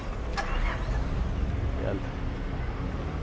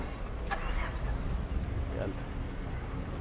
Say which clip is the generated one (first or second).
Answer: second